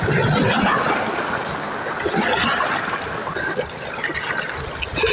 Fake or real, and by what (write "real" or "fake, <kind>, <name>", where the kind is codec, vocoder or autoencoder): real